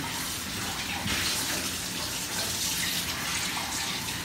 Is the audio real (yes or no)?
yes